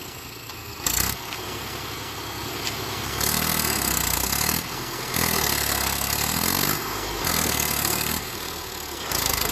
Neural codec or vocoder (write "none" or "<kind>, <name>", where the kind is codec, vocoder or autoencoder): codec, SNAC